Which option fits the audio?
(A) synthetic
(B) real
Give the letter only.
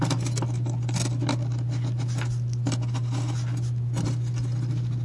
B